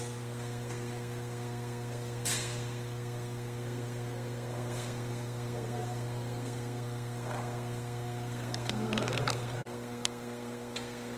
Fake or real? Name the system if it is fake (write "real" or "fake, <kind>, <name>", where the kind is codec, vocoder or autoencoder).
fake, codec, SNAC